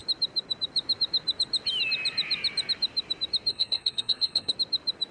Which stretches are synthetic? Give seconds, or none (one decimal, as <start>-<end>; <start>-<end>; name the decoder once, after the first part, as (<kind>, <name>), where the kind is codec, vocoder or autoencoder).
3.5-4.5 (codec, SNAC)